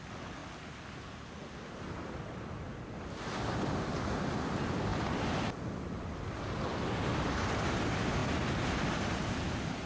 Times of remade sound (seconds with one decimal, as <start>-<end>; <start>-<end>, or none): none